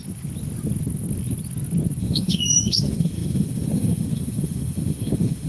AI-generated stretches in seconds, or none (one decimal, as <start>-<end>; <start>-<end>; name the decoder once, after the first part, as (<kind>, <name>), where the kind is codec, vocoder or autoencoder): 2.0-5.5 (autoencoder, DAC-VAE)